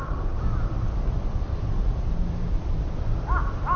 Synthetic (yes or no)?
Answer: no